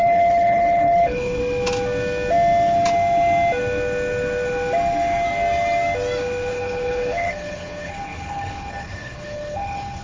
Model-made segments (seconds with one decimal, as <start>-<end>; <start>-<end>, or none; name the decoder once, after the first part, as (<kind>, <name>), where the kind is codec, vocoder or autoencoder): 0.0-1.4 (codec, HILCodec); 6.5-10.0